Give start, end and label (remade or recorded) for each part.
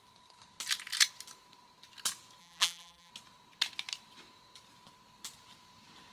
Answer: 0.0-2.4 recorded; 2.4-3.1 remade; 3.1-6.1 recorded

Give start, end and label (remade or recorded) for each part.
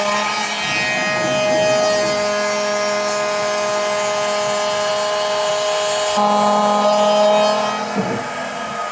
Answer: 0.0-8.9 recorded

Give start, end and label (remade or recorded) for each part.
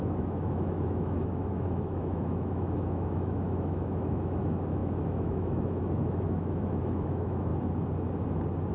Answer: 0.0-7.5 remade; 7.5-8.7 recorded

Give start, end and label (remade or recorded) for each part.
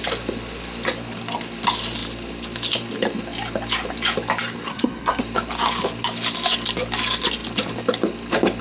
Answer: 0.0-4.7 recorded; 4.7-5.2 remade; 5.2-8.6 recorded